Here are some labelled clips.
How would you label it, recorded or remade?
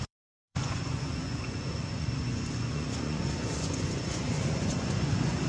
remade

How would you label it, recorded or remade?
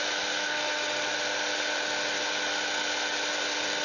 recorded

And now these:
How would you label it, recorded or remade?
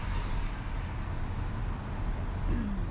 recorded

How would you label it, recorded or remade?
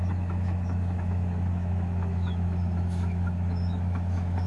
remade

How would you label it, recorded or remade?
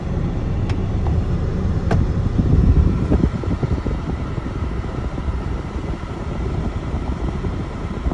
remade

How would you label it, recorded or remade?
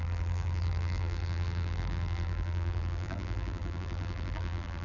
remade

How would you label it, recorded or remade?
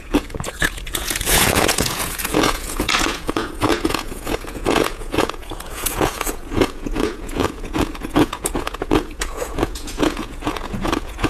remade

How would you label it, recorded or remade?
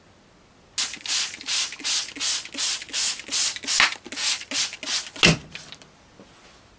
recorded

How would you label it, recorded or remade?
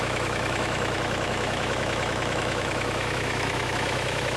remade